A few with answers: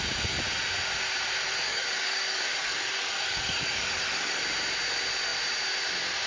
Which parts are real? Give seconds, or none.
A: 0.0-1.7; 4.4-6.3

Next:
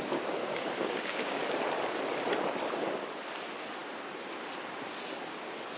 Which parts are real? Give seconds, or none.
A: 0.0-0.4; 1.4-5.8

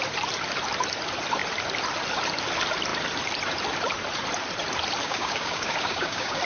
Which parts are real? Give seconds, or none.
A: 0.0-5.0

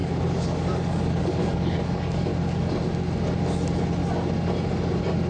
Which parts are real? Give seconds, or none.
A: 2.3-5.3

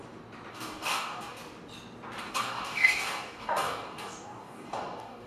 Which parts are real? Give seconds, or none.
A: 0.0-0.5; 1.4-2.2

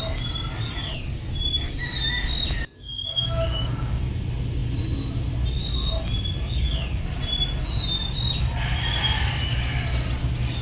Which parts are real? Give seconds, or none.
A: 0.0-2.9; 4.1-10.6